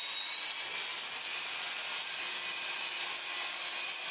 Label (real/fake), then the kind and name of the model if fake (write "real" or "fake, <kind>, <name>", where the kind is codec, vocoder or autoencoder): real